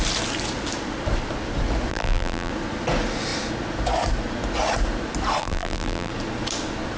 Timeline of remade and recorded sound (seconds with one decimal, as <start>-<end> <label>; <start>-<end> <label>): 0.0-1.9 recorded; 1.9-2.5 remade; 2.5-5.4 recorded; 5.4-6.1 remade; 6.1-7.0 recorded